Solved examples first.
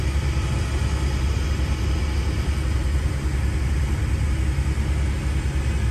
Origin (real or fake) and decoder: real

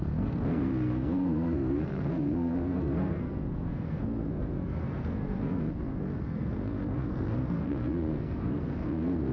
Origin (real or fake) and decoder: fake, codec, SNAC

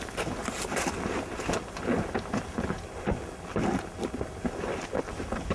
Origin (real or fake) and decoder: real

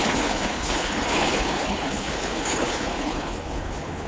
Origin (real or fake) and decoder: fake, codec, HILCodec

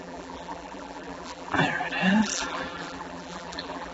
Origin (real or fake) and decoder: fake, vocoder, BigVGAN v2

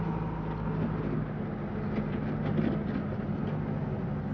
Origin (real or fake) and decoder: real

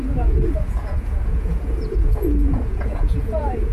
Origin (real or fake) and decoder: fake, vocoder, Vocos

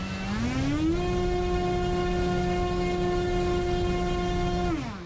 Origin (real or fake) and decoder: real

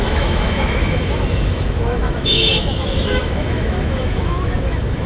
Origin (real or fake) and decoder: fake, autoencoder, DAC-VAE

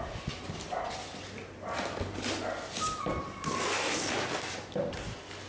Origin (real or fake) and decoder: real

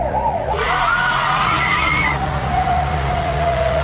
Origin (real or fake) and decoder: fake, vocoder, Vocos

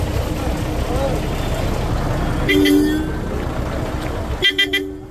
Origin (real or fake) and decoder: real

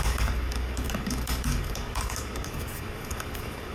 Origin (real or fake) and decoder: fake, codec, DAC